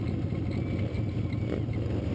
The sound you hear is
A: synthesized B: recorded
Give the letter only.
B